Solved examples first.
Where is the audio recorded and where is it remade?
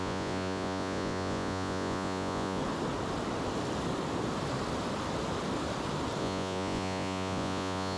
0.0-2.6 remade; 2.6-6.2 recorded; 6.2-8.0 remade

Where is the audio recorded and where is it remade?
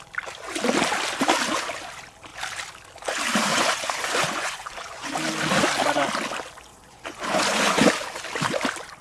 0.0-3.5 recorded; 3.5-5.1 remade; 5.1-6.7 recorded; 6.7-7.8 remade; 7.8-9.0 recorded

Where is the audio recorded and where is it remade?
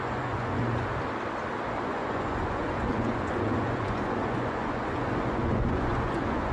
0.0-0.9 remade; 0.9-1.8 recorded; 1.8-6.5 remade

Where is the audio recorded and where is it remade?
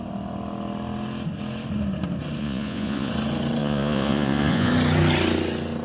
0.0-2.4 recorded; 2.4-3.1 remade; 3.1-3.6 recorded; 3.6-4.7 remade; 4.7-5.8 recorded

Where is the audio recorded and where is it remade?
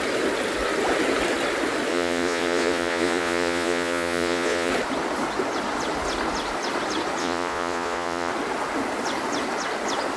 0.0-1.9 recorded; 1.9-4.7 remade; 4.7-7.2 recorded; 7.2-8.3 remade; 8.3-10.2 recorded